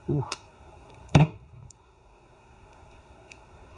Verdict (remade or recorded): remade